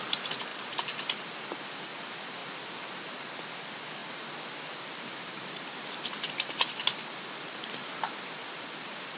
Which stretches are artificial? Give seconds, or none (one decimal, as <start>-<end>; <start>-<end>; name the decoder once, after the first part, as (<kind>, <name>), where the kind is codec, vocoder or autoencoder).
0.5-2.0 (vocoder, BigVGAN v2); 4.0-9.2